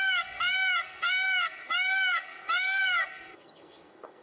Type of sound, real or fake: fake